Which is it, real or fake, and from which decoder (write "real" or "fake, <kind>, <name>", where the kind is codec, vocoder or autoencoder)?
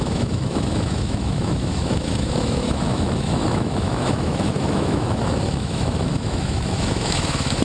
fake, autoencoder, DAC-VAE